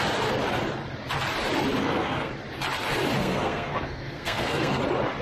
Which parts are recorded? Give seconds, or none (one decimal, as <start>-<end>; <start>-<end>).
0.0-1.8; 2.3-3.2; 4.8-5.2